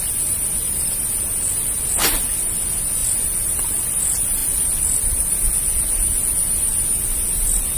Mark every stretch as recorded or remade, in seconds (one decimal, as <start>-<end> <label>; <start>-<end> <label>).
0.0-7.8 remade